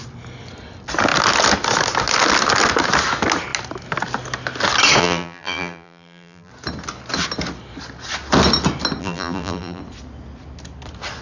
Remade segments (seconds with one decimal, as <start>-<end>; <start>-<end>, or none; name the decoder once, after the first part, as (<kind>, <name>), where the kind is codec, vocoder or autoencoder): 5.0-6.5 (vocoder, BigVGAN v2); 9.0-9.8